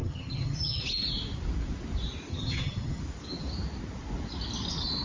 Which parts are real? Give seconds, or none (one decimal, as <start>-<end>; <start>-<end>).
0.8-2.3; 3.0-5.0